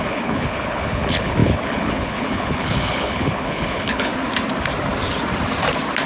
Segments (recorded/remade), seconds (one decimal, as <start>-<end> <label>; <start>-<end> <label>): 0.0-4.1 remade; 4.1-6.1 recorded